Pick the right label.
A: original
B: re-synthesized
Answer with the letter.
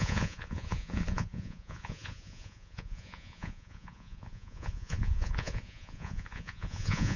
B